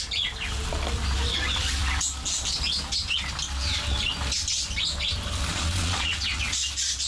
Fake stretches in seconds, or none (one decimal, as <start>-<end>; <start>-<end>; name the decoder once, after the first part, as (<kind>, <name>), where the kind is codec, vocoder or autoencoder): 5.5-6.4 (vocoder, Vocos)